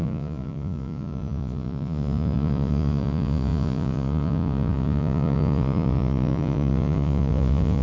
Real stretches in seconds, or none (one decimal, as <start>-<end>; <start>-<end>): none